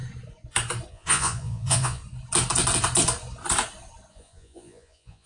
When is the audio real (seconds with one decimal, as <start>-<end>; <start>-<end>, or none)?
0.0-0.9; 2.0-4.1